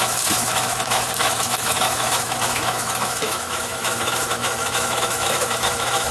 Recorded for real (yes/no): no